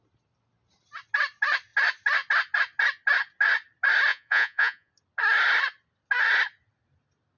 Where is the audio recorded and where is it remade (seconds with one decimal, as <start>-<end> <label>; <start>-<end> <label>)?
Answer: 0.0-4.1 recorded; 4.1-4.9 remade; 4.9-7.4 recorded